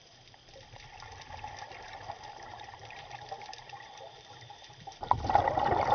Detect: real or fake fake